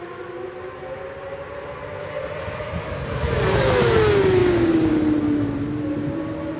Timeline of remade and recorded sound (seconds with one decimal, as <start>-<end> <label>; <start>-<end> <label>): 0.0-4.4 recorded; 4.4-4.9 remade; 4.9-6.6 recorded